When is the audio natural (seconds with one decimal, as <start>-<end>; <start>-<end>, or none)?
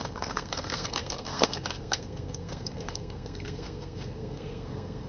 none